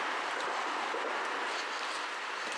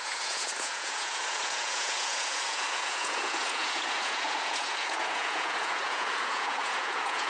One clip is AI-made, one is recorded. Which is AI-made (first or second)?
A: second